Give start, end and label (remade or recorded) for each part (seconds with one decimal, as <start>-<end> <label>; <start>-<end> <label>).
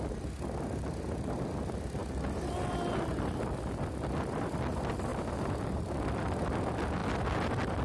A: 0.0-5.1 recorded; 5.1-6.1 remade; 6.1-7.8 recorded